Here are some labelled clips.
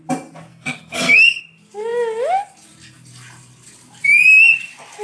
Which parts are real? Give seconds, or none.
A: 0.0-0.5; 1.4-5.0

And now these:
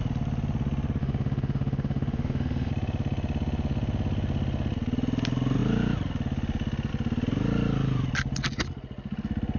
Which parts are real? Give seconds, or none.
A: 0.0-1.0; 2.7-9.6

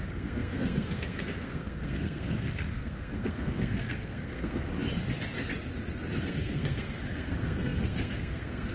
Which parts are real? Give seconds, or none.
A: 4.7-6.2

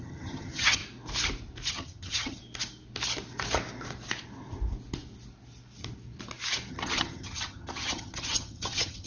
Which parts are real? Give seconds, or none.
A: 0.8-1.7; 2.4-6.7

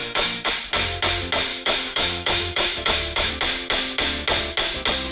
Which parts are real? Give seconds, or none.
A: 0.5-1.5; 3.3-5.1

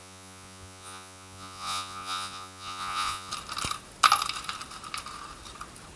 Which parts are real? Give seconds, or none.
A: 3.3-6.0